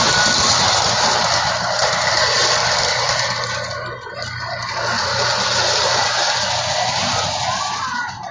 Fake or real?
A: real